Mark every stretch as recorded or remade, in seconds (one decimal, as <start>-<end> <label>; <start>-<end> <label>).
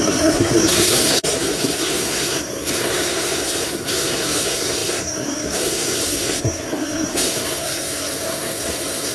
0.0-9.1 remade